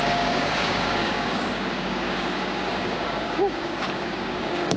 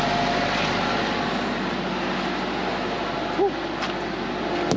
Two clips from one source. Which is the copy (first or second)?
first